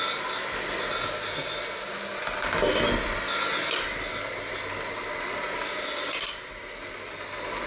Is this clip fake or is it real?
real